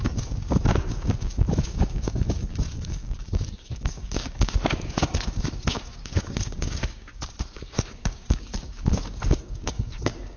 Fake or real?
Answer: fake